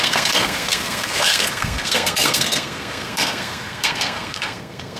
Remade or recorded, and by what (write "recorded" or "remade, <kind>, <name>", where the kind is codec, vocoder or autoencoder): remade, codec, SNAC